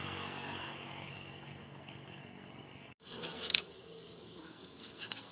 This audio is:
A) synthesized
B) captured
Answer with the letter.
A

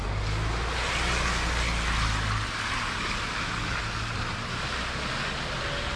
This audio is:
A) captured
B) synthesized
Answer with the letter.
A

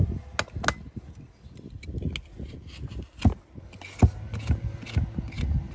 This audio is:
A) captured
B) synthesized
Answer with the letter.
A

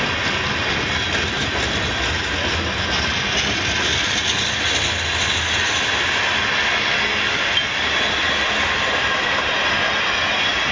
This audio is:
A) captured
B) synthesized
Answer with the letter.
A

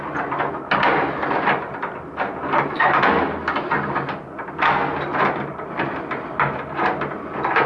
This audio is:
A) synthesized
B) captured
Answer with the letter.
B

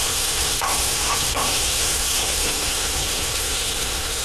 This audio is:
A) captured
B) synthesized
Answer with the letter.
B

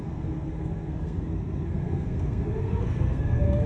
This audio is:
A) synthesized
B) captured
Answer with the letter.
A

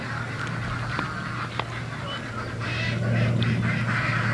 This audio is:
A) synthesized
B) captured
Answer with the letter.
B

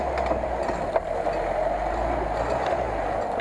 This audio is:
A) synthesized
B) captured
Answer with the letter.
B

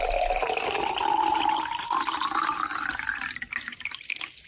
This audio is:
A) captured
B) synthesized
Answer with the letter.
A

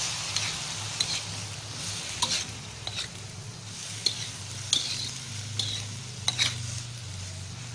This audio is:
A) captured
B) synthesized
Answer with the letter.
A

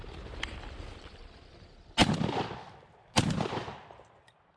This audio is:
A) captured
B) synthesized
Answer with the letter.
A